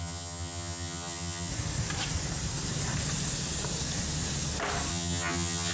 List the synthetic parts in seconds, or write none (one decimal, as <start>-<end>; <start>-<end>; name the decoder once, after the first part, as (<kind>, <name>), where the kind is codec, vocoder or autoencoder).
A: 0.0-1.5 (vocoder, HiFi-GAN); 4.9-5.7